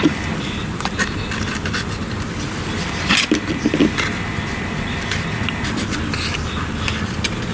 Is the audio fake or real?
real